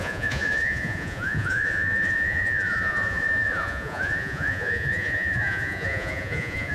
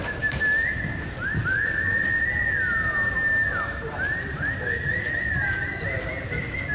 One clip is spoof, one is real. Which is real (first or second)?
second